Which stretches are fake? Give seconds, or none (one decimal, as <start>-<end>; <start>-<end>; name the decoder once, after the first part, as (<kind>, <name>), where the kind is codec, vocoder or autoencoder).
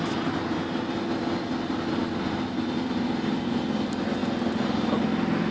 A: 4.2-5.0 (vocoder, BigVGAN v2)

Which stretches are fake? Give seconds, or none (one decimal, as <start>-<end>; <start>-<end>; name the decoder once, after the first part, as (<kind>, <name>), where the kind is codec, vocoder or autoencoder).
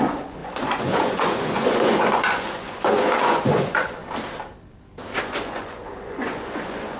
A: 0.0-4.0 (vocoder, Vocos); 5.2-7.0